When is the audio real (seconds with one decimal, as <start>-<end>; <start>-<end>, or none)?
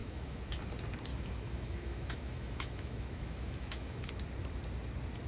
0.6-1.1; 4.1-5.3